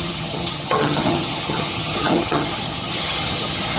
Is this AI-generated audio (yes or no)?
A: yes